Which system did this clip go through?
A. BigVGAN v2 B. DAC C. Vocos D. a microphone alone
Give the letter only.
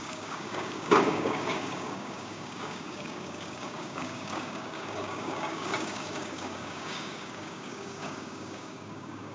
B